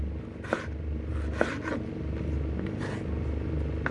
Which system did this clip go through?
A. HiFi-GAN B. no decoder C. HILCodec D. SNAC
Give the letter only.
B